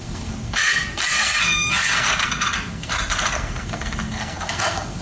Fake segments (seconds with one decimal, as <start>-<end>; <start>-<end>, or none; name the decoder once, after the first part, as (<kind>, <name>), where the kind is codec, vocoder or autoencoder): 0.0-5.0 (codec, SNAC)